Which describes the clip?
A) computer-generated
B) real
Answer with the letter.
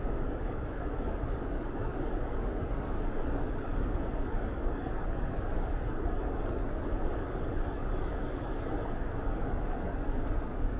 A